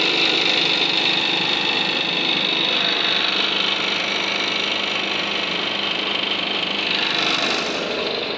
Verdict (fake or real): real